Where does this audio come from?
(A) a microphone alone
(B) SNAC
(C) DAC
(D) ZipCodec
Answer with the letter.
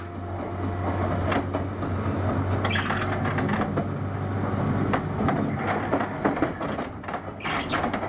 A